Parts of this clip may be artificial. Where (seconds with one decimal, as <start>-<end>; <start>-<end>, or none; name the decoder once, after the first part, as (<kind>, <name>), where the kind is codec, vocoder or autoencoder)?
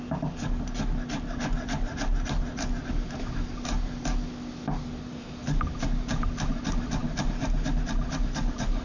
none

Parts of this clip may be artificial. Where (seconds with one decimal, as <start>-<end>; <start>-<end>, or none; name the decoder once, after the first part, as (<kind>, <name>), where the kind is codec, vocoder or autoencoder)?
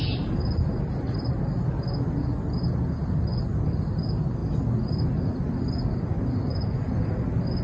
none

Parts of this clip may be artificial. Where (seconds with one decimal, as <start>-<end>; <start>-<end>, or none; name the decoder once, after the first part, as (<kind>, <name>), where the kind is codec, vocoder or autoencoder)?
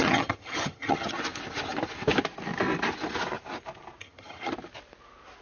0.0-1.1 (vocoder, HiFi-GAN); 4.0-4.5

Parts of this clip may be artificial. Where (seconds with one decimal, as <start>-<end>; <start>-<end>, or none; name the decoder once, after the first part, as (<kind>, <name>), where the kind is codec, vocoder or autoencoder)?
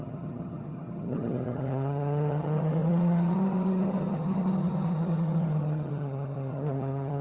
0.0-7.2 (vocoder, HiFi-GAN)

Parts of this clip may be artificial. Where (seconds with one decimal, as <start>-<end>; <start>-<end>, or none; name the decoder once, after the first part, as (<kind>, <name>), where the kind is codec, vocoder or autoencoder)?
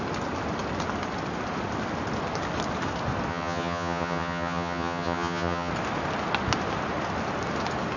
3.3-5.7 (vocoder, HiFi-GAN)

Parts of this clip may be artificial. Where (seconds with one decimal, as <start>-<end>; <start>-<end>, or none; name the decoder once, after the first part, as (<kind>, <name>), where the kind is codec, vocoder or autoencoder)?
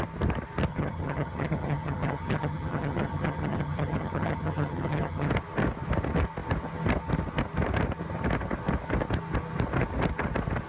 0.7-5.3 (vocoder, HiFi-GAN)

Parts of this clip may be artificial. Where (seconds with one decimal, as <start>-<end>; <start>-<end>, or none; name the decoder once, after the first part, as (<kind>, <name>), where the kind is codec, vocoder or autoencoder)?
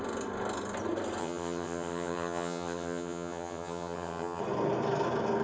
1.2-4.4 (vocoder, HiFi-GAN)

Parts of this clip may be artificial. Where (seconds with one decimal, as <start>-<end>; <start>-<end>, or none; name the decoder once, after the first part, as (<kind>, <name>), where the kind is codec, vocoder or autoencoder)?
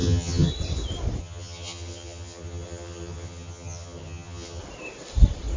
0.0-0.5 (vocoder, HiFi-GAN); 1.2-4.6